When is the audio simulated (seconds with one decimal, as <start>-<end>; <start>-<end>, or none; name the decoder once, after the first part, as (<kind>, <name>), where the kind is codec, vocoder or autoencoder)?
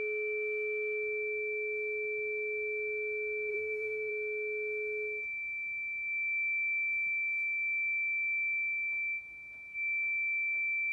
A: 3.5-4.1 (vocoder, BigVGAN v2)